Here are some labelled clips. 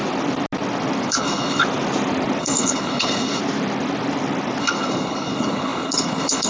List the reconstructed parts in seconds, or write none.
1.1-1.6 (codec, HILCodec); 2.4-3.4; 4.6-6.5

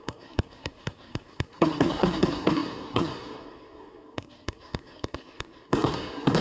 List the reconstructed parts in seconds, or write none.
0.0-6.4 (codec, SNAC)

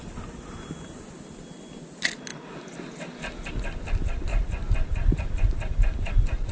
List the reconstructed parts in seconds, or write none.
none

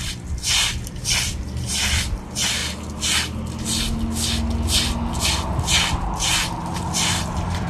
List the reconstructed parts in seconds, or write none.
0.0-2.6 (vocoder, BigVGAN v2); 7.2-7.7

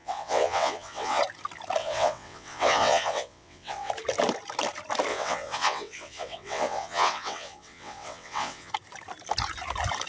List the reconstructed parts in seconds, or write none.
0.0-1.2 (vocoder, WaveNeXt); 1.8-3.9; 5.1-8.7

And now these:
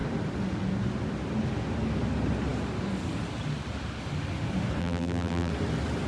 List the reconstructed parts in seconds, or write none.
4.8-5.5 (vocoder, BigVGAN v2)

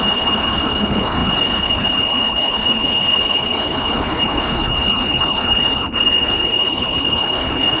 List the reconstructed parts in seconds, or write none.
0.0-7.8 (codec, HILCodec)